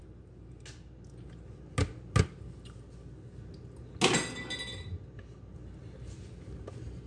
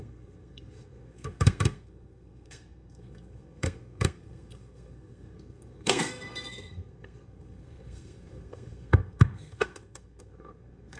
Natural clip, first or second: first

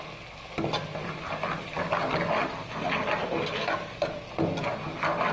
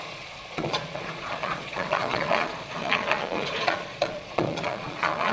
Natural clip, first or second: first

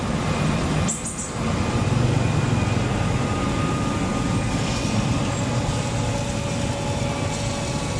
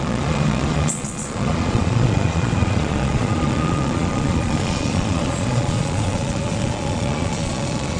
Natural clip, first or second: first